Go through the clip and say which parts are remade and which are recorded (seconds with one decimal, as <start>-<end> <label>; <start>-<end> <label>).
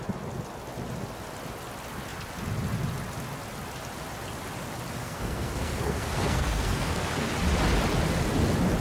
0.0-5.0 recorded; 5.0-7.3 remade; 7.3-8.8 recorded